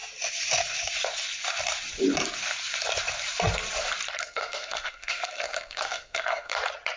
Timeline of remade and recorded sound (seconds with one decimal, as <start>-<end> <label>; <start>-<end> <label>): 0.0-4.2 recorded; 4.2-6.5 remade; 6.5-7.0 recorded